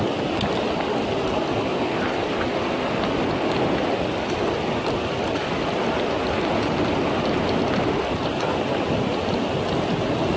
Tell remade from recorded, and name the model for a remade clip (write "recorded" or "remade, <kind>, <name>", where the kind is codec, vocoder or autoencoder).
recorded